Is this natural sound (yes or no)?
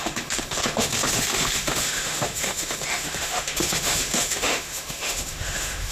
no